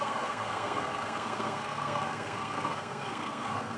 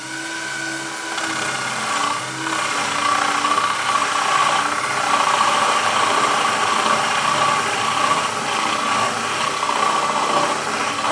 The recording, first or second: second